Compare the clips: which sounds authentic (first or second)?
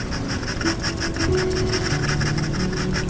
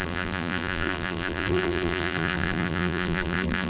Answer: first